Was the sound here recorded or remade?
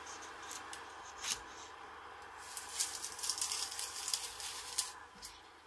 recorded